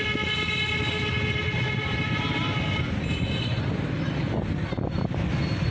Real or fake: real